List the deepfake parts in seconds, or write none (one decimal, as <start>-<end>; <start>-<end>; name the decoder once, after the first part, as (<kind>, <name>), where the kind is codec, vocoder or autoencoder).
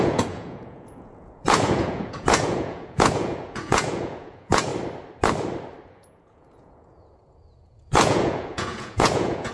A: 0.0-4.7 (vocoder, Vocos); 5.9-9.5